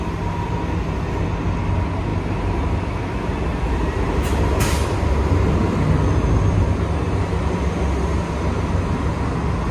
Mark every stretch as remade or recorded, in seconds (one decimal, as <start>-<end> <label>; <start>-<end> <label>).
0.0-9.7 recorded

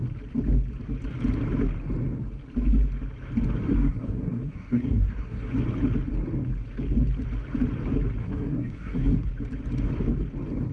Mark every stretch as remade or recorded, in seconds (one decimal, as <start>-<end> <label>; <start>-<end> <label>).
0.0-3.7 recorded; 3.7-5.5 remade; 5.5-8.2 recorded; 8.2-9.3 remade; 9.3-10.7 recorded

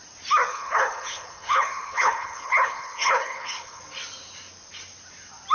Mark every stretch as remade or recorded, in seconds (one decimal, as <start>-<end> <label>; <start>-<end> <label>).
0.0-0.5 recorded; 0.5-3.8 remade; 3.8-5.5 recorded

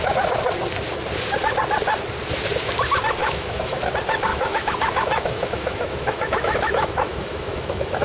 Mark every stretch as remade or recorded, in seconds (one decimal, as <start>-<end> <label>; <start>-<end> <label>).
0.0-3.2 recorded; 3.2-3.8 remade; 3.8-4.3 recorded; 4.3-8.0 remade